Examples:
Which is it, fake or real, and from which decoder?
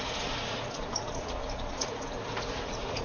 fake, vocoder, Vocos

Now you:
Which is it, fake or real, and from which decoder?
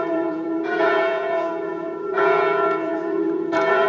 fake, vocoder, Vocos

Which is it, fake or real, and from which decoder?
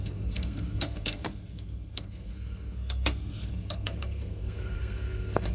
fake, codec, SNAC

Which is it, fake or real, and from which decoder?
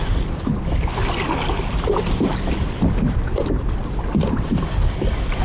real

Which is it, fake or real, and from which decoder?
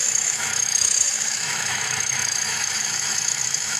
fake, autoencoder, DAC-VAE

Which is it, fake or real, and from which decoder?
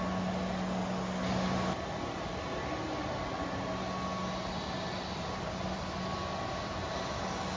real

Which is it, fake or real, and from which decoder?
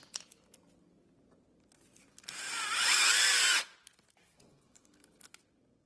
real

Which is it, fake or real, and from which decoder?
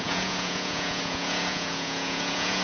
fake, vocoder, Vocos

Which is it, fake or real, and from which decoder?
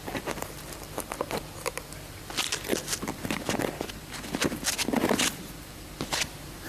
fake, vocoder, BigVGAN v2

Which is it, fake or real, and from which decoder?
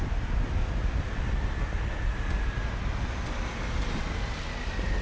real